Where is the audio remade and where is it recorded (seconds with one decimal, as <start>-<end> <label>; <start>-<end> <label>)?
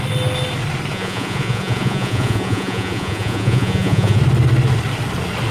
0.0-0.9 recorded; 0.9-4.2 remade; 4.2-5.5 recorded